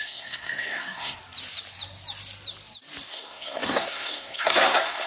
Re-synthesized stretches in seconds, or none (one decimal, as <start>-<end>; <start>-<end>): 0.0-1.2; 3.1-5.1